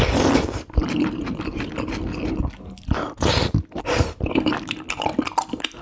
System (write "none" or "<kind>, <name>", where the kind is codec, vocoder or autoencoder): none